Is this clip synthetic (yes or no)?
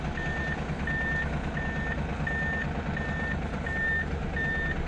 no